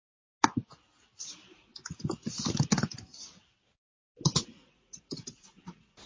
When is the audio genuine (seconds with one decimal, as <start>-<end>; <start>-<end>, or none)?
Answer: 0.0-1.5; 2.1-4.6